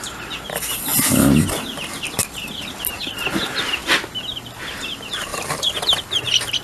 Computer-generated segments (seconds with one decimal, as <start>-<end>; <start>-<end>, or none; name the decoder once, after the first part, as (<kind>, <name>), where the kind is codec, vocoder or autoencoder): none